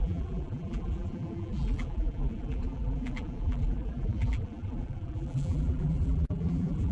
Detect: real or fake fake